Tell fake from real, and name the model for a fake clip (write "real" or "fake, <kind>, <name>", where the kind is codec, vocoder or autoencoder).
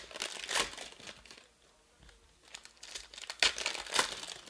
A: real